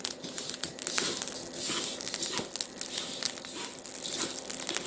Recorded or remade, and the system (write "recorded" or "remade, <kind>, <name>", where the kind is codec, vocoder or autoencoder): recorded